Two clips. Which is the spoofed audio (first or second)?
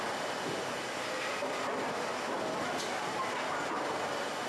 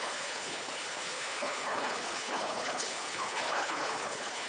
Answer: second